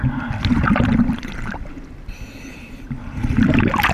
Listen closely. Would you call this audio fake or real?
real